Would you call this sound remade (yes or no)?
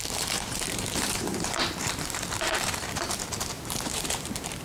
yes